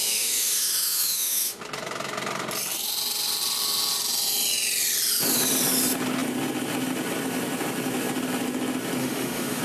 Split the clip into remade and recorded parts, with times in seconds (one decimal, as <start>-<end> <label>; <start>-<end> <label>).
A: 0.0-1.6 remade; 1.6-9.0 recorded; 9.0-9.6 remade